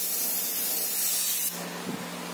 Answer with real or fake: real